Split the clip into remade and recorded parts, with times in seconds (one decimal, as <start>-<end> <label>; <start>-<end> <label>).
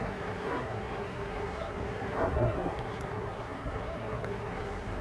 0.0-5.0 remade